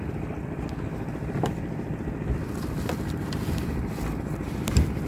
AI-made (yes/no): yes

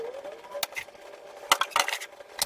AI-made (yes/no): no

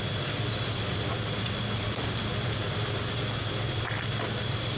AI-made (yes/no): yes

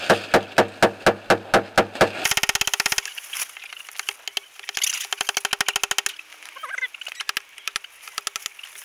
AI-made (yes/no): no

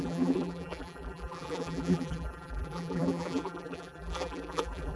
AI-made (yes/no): yes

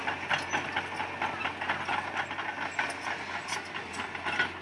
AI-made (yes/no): no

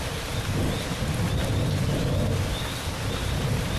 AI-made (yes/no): no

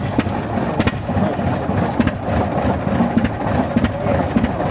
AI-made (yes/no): no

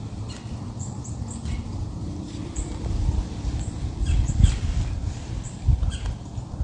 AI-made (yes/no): yes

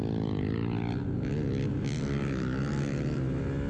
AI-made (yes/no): no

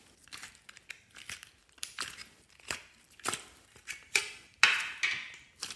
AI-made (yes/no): no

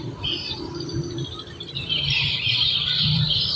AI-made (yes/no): yes